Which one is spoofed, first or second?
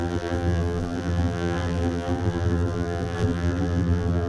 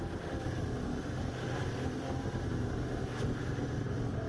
first